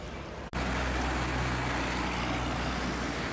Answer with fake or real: real